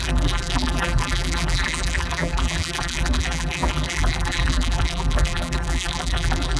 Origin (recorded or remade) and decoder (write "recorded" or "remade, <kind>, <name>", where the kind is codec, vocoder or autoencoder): remade, vocoder, BigVGAN v2